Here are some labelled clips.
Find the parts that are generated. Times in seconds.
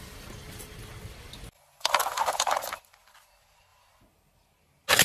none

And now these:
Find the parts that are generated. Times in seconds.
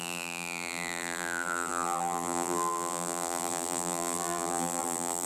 0.0-5.3 (vocoder, BigVGAN v2)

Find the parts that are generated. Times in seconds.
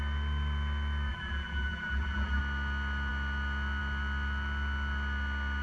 1.1-2.4 (vocoder, BigVGAN v2)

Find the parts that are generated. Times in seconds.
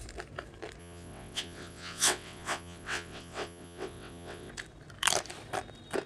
0.8-4.5 (vocoder, WaveNeXt)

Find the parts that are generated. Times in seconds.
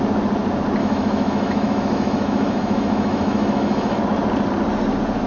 0.8-4.0 (autoencoder, DAC-VAE)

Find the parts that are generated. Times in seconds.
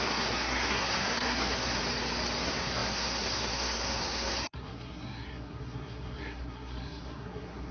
0.0-1.8 (codec, SNAC); 2.4-7.7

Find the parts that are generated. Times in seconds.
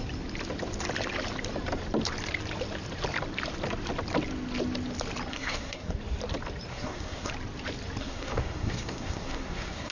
5.3-5.9 (codec, SNAC); 6.7-7.3; 8.0-9.9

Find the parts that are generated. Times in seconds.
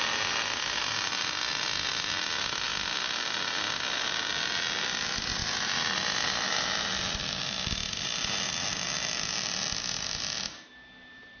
2.7-3.5 (vocoder, BigVGAN v2); 5.4-8.5